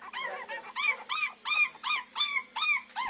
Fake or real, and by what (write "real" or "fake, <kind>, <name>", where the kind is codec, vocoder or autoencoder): real